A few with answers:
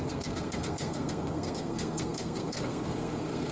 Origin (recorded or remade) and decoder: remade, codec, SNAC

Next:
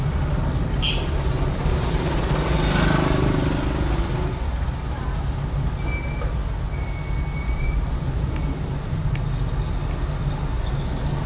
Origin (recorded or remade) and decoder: recorded